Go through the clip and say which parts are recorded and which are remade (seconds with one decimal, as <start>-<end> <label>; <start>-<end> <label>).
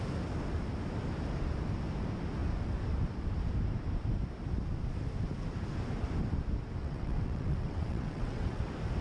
0.0-6.8 recorded; 6.8-8.6 remade; 8.6-9.0 recorded